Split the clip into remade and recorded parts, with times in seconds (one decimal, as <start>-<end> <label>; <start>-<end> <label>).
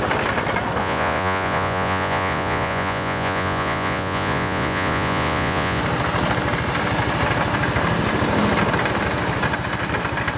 0.0-0.8 recorded; 0.8-5.8 remade; 5.8-10.4 recorded